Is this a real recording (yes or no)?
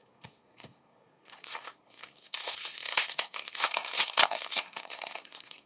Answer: no